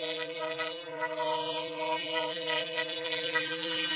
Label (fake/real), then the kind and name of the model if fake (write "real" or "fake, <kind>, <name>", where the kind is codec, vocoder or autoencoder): fake, vocoder, BigVGAN v2